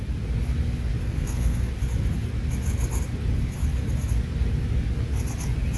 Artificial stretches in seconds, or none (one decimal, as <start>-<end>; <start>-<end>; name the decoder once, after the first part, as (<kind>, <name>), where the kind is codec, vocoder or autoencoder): 1.0-1.7 (codec, SNAC)